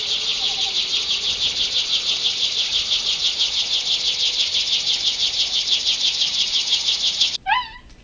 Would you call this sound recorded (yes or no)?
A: no